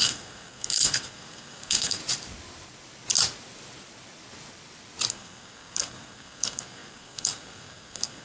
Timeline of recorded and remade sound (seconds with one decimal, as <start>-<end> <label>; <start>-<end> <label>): 0.0-2.0 remade; 2.0-5.1 recorded; 5.1-8.2 remade